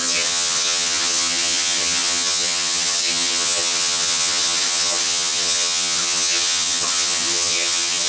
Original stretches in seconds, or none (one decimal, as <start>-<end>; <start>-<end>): none